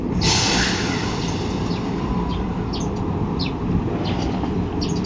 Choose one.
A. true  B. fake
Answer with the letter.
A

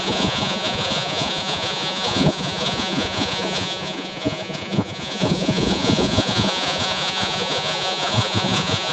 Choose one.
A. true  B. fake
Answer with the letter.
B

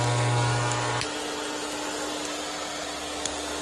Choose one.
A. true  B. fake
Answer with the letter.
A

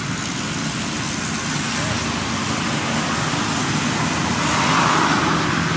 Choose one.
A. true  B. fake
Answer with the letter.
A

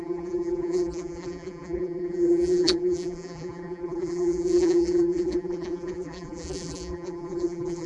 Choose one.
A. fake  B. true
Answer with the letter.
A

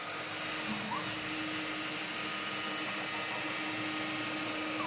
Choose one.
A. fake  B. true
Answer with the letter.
B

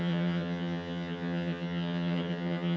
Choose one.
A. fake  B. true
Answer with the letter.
A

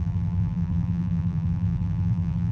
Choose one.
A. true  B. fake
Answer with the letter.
B